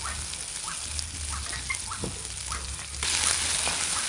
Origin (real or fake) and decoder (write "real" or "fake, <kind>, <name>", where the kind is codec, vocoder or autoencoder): real